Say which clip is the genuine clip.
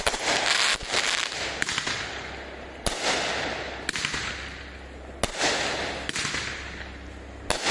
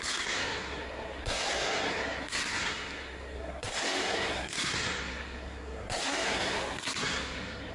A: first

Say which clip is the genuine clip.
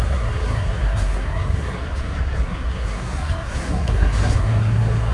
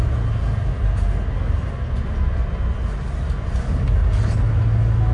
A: second